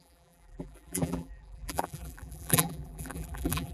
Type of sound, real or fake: fake